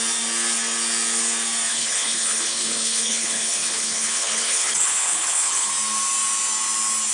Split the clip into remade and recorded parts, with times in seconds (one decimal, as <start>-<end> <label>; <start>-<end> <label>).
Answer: 0.0-1.7 recorded; 1.7-5.7 remade; 5.7-7.1 recorded